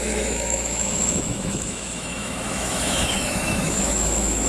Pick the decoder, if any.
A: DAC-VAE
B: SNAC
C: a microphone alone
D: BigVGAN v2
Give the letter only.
A